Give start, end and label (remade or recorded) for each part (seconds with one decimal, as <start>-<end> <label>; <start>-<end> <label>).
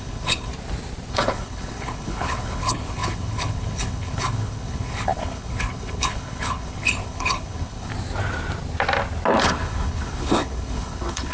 0.0-0.5 remade; 0.5-1.1 recorded; 1.1-7.9 remade; 7.9-9.4 recorded; 9.4-11.3 remade